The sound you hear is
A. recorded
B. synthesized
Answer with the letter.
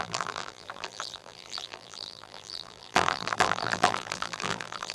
B